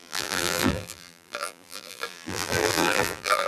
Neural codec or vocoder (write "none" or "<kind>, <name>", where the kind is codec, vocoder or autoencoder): vocoder, BigVGAN v2